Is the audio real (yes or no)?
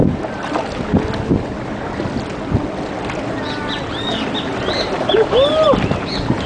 yes